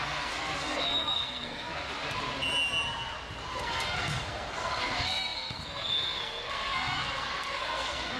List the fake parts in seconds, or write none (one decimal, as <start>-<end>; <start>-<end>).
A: 0.0-1.9; 3.5-8.2